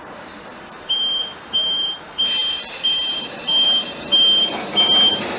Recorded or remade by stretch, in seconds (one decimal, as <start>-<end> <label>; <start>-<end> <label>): 0.0-2.4 remade; 2.4-3.1 recorded; 3.1-5.4 remade